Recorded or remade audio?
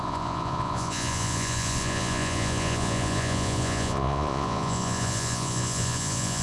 remade